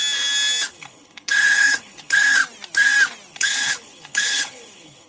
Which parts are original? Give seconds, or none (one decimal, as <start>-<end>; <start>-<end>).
0.0-0.7; 2.4-3.3